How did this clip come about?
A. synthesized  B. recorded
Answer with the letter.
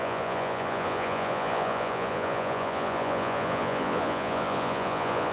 A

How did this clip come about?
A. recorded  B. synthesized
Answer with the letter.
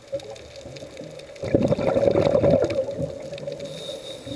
A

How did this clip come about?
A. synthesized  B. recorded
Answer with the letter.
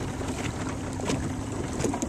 B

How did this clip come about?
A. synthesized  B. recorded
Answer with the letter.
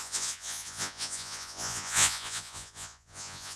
A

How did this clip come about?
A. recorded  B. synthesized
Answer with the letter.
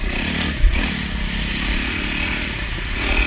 B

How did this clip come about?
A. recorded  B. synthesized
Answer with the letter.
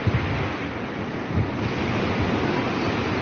A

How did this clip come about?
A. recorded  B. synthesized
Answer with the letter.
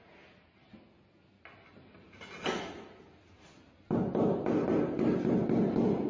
A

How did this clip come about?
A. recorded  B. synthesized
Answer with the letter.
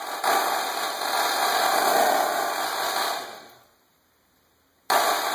A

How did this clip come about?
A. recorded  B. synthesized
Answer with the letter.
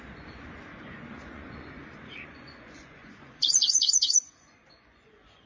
B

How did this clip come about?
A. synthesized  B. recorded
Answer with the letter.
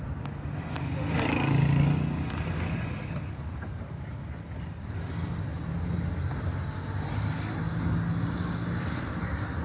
B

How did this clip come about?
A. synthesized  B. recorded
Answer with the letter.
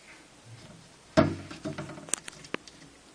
B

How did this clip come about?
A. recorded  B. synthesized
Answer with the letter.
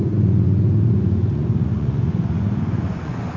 B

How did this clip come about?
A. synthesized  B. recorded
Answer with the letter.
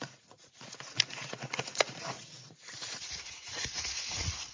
A